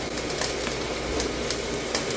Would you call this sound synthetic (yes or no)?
no